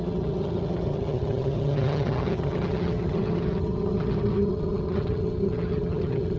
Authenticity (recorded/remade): remade